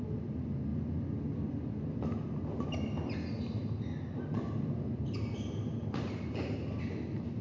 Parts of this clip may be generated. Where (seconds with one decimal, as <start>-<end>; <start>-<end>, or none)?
none